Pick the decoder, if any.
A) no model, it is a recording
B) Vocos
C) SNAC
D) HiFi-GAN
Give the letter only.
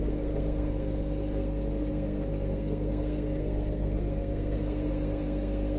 C